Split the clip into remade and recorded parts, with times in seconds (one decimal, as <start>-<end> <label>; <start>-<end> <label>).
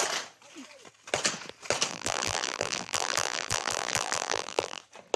0.0-1.9 recorded; 1.9-4.8 remade; 4.8-5.2 recorded